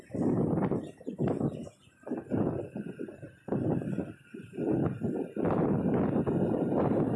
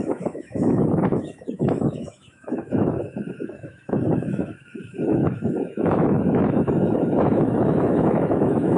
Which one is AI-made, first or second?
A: second